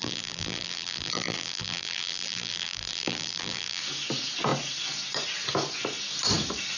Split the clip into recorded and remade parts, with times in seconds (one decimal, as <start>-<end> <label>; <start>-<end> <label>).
0.0-3.8 remade; 3.8-6.8 recorded